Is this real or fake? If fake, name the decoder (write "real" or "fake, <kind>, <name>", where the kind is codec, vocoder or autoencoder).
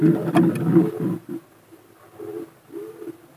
fake, vocoder, BigVGAN v2